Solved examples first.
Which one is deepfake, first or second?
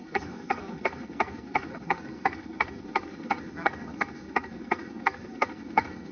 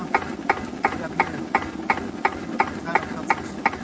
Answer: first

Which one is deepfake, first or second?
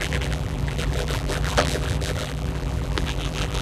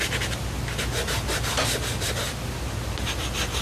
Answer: first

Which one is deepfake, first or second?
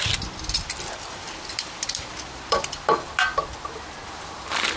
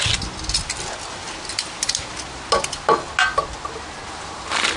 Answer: first